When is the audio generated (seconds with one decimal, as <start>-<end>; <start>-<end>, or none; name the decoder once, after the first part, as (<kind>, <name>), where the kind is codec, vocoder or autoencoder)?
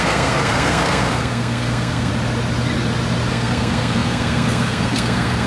0.0-2.1 (codec, SNAC); 3.3-5.5